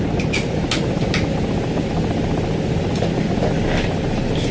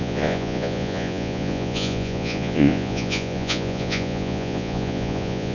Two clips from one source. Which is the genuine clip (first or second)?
first